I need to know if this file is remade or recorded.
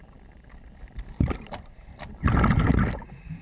recorded